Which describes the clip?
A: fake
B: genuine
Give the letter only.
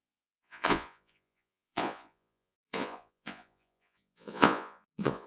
A